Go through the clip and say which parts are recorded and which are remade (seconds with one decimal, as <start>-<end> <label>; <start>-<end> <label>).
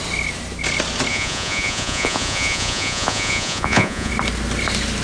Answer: 0.0-1.1 recorded; 1.1-4.1 remade; 4.1-5.0 recorded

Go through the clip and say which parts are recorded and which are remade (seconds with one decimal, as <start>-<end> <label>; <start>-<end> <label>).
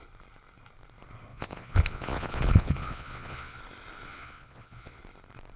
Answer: 0.0-1.3 recorded; 1.3-3.6 remade; 3.6-4.1 recorded; 4.1-5.0 remade; 5.0-5.6 recorded